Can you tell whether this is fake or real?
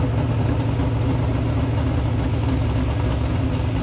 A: real